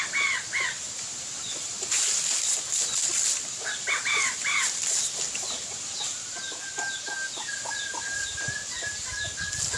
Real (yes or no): yes